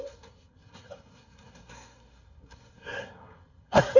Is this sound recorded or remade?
remade